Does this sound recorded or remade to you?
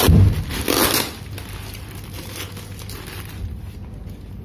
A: recorded